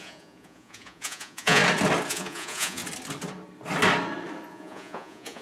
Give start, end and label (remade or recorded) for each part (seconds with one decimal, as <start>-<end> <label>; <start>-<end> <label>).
0.0-1.6 remade; 1.6-2.1 recorded; 2.1-2.8 remade; 2.8-4.5 recorded; 4.5-5.4 remade